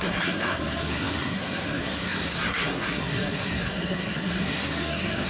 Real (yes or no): no